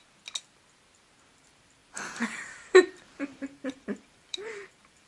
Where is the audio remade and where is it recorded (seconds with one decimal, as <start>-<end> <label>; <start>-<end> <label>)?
0.0-1.8 recorded; 1.8-5.1 remade

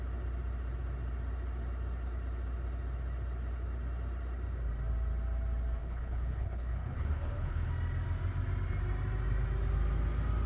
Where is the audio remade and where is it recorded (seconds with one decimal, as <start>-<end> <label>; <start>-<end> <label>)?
0.0-5.8 recorded; 5.8-7.7 remade; 7.7-10.5 recorded

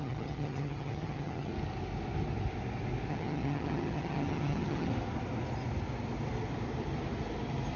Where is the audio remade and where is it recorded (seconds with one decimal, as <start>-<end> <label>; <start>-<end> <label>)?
0.0-1.5 remade; 1.5-3.1 recorded; 3.1-4.9 remade; 4.9-7.8 recorded

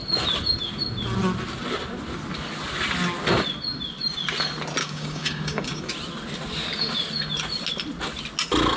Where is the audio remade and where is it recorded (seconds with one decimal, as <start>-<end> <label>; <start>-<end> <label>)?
0.0-4.8 recorded; 4.8-5.9 remade; 5.9-8.8 recorded

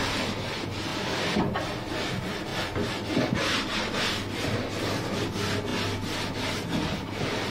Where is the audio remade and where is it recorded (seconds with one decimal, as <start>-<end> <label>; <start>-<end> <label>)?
0.0-2.5 recorded; 2.5-4.8 remade; 4.8-7.5 recorded

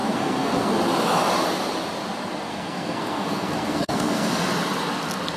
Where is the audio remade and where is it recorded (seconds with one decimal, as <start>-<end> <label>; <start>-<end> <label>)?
0.0-0.7 remade; 0.7-2.5 recorded; 2.5-4.3 remade; 4.3-5.4 recorded

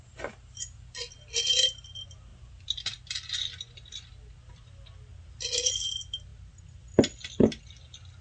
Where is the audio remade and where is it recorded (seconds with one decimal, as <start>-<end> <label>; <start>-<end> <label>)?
0.0-8.2 recorded